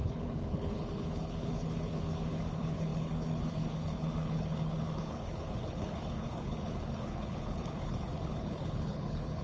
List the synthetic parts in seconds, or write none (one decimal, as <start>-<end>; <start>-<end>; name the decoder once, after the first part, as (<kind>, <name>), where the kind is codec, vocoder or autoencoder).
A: 0.0-9.4 (codec, HILCodec)